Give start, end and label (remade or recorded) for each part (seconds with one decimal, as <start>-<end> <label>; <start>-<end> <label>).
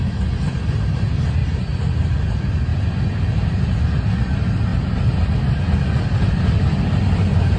0.0-7.6 recorded